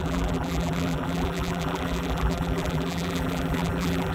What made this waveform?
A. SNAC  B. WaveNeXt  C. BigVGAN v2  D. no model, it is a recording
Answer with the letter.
C